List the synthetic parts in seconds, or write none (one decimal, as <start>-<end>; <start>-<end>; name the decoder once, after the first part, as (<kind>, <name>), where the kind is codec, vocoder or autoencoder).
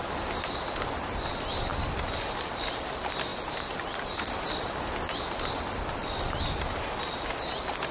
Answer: none